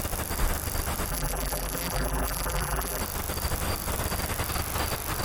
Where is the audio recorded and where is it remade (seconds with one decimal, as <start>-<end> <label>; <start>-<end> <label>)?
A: 0.0-1.1 recorded; 1.1-3.0 remade; 3.0-5.2 recorded